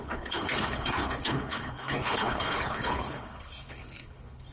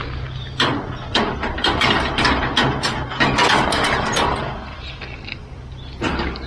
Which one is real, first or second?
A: second